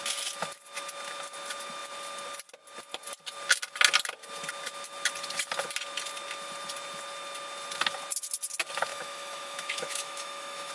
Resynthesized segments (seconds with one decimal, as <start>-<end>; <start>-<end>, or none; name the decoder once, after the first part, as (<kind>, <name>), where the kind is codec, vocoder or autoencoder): 8.9-10.7 (autoencoder, DAC-VAE)